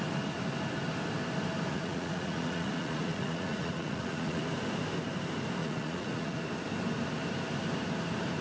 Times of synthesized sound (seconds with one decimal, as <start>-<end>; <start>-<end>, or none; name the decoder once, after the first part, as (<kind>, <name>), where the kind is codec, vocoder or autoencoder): 1.7-4.4 (vocoder, Vocos); 5.6-6.4